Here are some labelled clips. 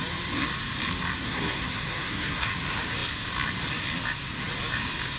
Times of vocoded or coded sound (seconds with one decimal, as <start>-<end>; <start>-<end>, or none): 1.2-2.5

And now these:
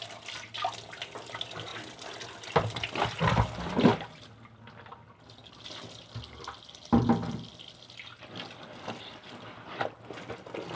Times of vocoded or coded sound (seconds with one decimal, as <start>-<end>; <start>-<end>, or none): none

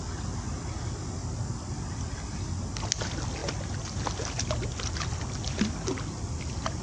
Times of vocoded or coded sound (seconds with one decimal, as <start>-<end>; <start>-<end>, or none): none